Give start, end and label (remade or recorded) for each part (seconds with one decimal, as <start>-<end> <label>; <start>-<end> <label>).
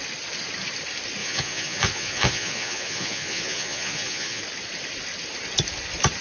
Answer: 0.0-1.2 recorded; 1.2-4.4 remade; 4.4-6.2 recorded